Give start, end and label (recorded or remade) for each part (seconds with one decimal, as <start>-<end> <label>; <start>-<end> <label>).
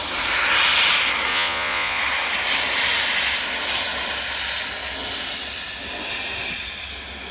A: 0.0-1.3 recorded; 1.3-2.0 remade; 2.0-7.3 recorded